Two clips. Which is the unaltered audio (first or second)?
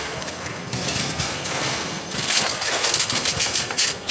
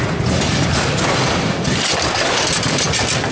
second